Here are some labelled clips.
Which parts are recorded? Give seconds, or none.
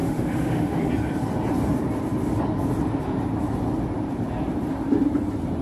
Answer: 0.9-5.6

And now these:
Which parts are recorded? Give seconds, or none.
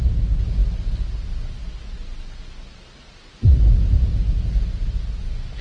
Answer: 0.0-5.6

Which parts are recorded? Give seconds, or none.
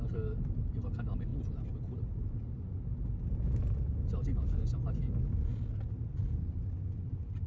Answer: 0.0-7.5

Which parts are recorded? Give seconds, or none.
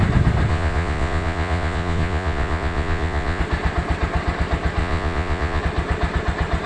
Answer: 0.0-0.5; 3.4-4.8; 5.6-6.7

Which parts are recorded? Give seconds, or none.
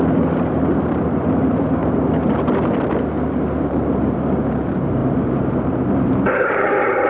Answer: 1.8-3.6